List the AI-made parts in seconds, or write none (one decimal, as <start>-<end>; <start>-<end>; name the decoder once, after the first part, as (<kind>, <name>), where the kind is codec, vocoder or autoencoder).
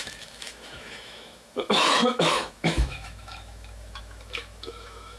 0.0-5.2 (autoencoder, DAC-VAE)